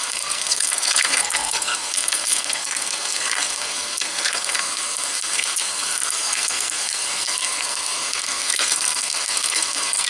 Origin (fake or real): fake